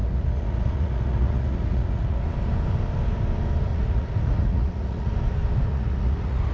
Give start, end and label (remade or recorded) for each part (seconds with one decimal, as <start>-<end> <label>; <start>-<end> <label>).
0.0-2.2 remade; 2.2-3.7 recorded; 3.7-5.1 remade; 5.1-5.7 recorded; 5.7-6.5 remade